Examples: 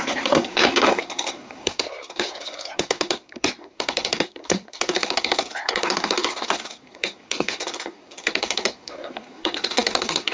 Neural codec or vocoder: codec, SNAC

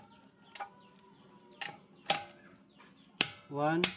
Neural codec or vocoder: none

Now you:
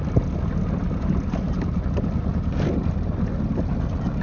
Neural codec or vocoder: none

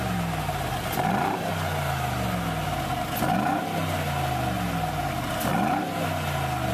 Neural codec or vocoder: none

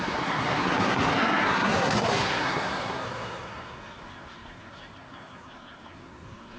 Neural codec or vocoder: codec, SNAC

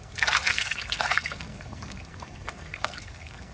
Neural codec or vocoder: codec, SNAC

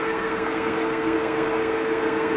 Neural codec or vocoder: codec, SNAC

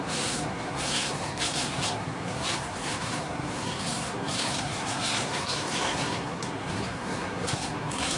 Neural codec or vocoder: codec, SNAC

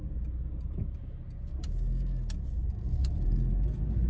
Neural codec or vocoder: none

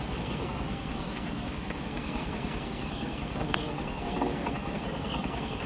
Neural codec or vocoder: codec, SNAC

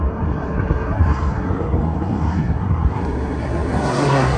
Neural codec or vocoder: codec, SNAC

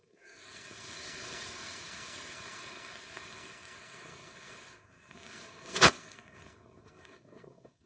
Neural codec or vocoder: codec, SNAC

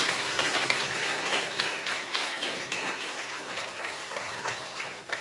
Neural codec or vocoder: codec, SNAC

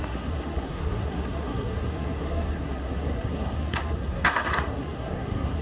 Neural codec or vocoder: codec, SNAC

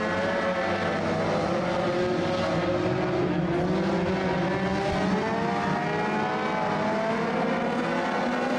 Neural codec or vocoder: none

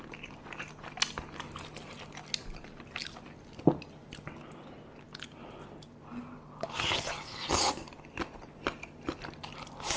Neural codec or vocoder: none